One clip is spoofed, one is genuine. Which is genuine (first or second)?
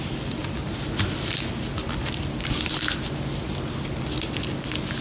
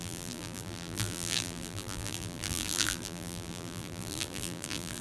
first